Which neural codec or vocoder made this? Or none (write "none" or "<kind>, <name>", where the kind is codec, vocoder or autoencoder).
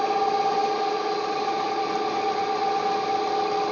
none